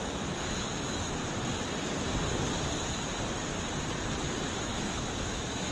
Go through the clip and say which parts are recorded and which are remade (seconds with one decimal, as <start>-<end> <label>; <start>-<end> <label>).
0.0-1.2 remade; 1.2-4.6 recorded; 4.6-5.7 remade